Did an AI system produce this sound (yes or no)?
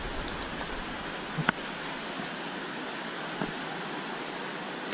no